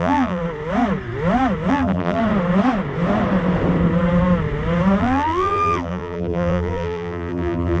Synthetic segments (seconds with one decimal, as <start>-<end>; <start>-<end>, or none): 0.0-0.4; 1.7-2.2; 5.0-7.8